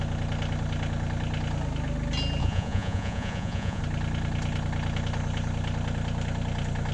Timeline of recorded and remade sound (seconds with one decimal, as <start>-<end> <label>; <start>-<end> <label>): 0.0-2.4 recorded; 2.4-3.8 remade; 3.8-6.9 recorded